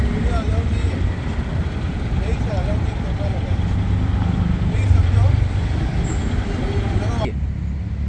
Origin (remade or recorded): recorded